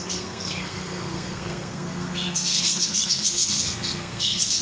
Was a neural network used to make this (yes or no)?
yes